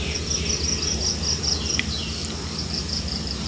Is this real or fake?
real